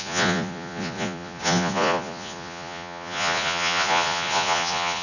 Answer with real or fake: fake